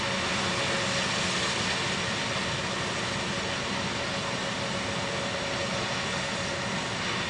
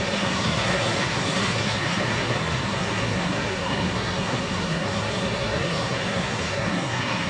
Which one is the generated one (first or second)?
second